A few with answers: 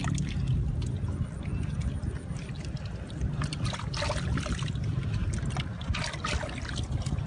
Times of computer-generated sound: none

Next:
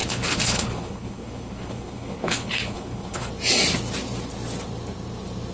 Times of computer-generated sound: 0.0-3.3 (codec, HILCodec)